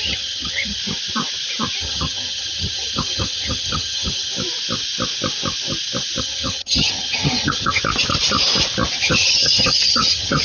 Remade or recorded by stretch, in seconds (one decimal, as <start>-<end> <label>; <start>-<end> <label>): 0.0-0.8 remade; 0.8-1.8 recorded; 1.8-4.3 remade; 4.3-6.2 recorded; 6.2-7.8 remade; 7.8-9.0 recorded; 9.0-10.4 remade